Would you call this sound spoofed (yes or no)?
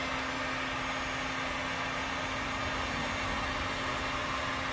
no